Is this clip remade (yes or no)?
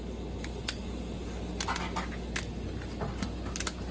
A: no